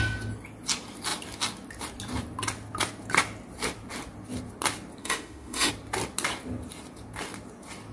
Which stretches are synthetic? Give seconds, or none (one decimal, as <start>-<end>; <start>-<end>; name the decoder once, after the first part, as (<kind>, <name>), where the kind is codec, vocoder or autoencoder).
5.0-5.7 (autoencoder, DAC-VAE)